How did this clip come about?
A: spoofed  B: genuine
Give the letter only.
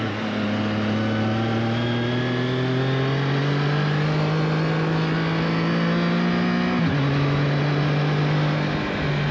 B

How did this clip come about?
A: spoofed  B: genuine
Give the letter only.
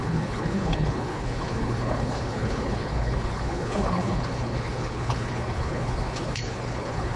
A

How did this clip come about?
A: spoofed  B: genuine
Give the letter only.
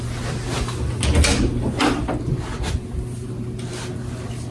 B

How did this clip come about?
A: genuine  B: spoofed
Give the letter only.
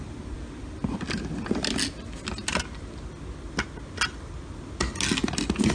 A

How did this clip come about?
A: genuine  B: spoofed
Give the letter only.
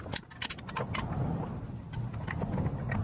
A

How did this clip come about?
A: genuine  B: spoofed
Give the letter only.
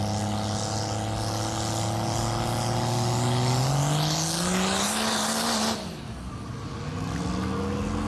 A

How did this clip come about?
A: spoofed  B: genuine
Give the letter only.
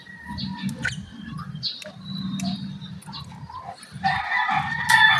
B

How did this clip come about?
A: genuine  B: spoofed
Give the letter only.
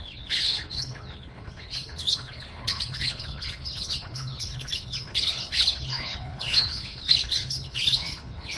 B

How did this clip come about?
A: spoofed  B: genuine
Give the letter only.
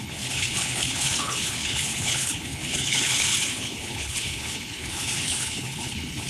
A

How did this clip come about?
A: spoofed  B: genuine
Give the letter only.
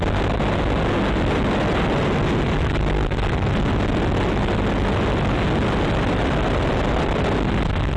B